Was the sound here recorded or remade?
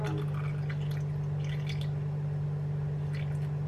recorded